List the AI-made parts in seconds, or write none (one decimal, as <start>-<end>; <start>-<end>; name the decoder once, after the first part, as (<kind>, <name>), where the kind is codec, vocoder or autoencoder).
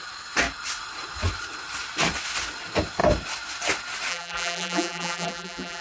4.1-5.8 (vocoder, BigVGAN v2)